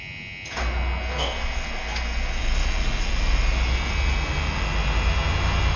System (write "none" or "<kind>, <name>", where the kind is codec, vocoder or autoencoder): none